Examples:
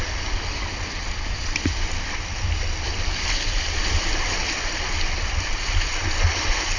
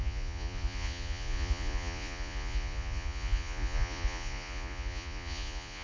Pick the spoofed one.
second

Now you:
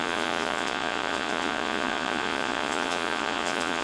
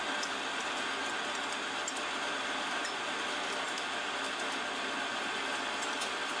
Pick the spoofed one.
first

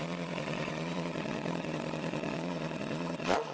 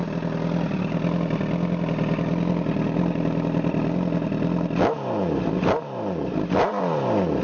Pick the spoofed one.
first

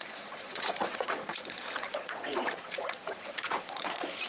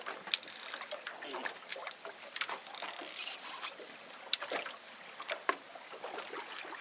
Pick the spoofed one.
first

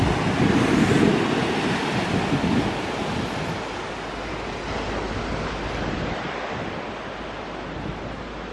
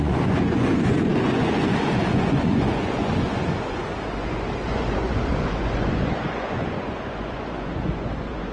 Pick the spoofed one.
second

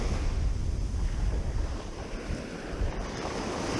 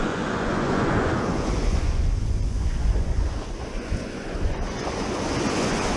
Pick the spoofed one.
second